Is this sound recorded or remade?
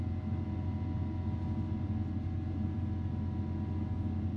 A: recorded